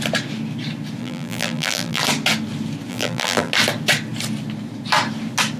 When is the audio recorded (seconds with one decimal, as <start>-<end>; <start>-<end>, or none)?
0.0-1.0; 2.0-2.9; 3.5-5.6